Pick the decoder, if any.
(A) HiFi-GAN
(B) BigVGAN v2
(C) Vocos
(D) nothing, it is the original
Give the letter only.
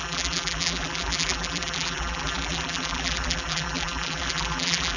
B